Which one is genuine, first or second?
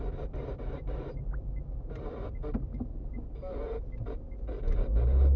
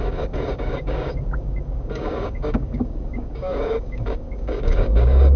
first